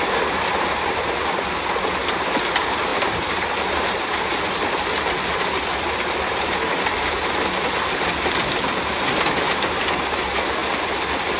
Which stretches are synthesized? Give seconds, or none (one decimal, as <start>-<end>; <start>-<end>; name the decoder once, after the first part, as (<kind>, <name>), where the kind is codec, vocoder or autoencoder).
none

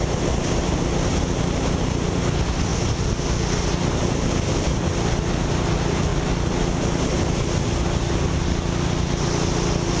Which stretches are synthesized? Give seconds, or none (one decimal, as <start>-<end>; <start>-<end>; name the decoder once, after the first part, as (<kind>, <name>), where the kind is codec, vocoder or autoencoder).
none

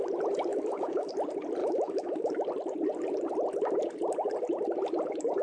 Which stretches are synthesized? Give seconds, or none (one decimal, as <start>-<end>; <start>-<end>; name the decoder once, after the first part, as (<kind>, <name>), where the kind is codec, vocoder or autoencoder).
0.5-1.1 (autoencoder, DAC-VAE); 1.6-2.3